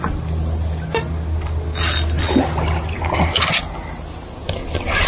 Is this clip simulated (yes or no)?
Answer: no